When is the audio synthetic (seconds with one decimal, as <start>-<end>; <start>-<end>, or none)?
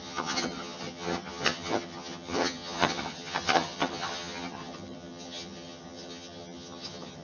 0.0-7.2